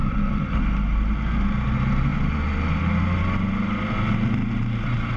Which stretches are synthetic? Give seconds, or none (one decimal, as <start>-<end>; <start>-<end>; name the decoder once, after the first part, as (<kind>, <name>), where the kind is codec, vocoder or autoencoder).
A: 0.0-0.6 (vocoder, BigVGAN v2)